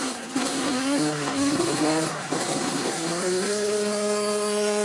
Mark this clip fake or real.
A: fake